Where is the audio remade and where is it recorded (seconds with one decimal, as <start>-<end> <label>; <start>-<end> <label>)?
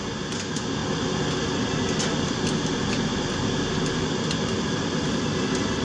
0.0-5.8 recorded